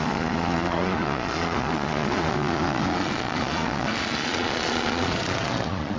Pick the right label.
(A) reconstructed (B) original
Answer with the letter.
A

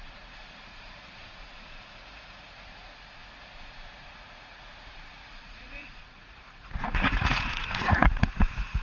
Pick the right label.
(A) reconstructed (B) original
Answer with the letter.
A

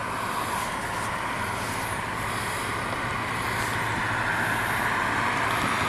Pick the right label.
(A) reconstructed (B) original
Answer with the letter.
B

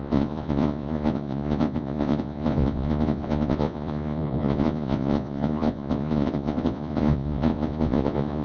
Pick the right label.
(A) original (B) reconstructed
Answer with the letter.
B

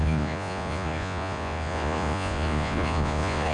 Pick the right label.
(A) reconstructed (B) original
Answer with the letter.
A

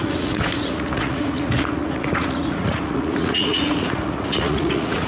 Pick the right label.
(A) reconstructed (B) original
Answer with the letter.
A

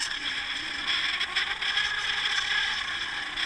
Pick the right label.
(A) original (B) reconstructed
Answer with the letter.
B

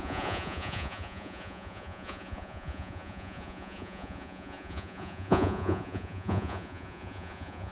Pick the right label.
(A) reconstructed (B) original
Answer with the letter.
A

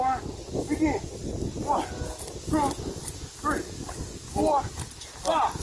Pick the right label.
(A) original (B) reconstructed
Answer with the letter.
A